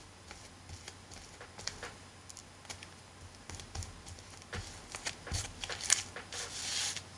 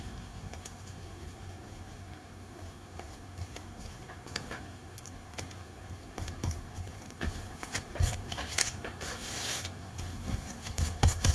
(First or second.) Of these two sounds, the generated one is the second